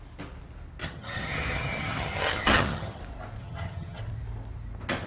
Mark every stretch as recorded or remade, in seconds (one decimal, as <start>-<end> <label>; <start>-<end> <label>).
0.0-0.8 recorded; 0.8-3.0 remade; 3.0-3.4 recorded; 3.4-4.0 remade; 4.0-5.1 recorded